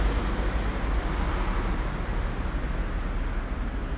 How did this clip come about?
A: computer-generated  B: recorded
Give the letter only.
B